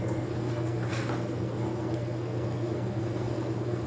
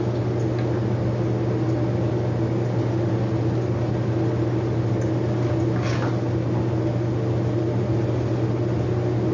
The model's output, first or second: first